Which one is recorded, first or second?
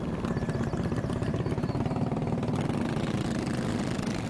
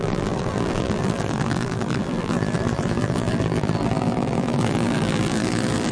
first